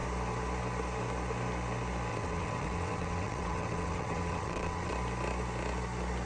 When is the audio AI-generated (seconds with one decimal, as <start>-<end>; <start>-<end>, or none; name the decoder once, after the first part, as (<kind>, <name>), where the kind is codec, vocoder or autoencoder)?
2.1-4.9 (vocoder, WaveNeXt)